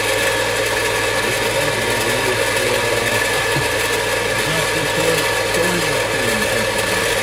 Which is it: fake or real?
real